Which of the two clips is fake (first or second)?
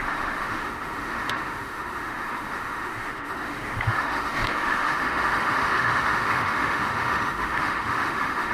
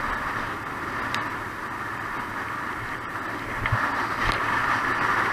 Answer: first